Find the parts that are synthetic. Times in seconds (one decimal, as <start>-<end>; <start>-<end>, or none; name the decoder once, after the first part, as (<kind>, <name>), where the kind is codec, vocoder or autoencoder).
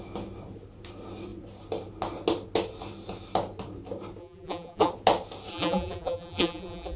4.2-4.9 (vocoder, BigVGAN v2); 5.5-7.0